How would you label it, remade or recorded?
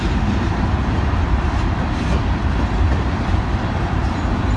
remade